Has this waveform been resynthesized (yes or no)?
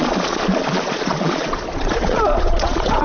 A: yes